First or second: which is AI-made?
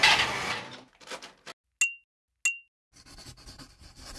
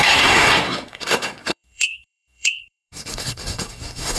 second